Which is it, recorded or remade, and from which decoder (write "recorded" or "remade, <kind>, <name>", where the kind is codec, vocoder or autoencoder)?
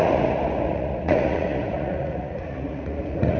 remade, vocoder, Vocos